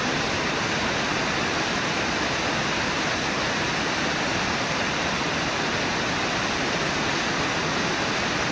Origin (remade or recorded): recorded